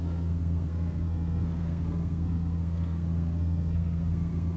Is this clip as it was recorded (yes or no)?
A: no